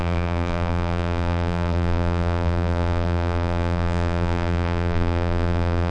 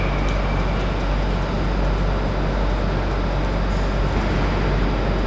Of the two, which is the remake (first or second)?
first